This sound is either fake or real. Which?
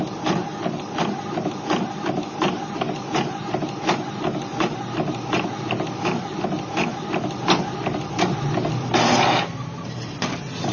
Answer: real